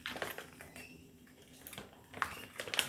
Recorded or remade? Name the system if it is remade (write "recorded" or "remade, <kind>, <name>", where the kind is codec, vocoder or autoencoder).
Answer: recorded